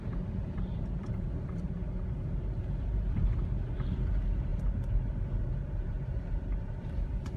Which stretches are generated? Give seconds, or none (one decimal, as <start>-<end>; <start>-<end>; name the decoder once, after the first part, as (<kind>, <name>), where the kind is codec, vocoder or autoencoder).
0.0-1.8 (vocoder, BigVGAN v2); 2.6-4.5; 5.4-7.4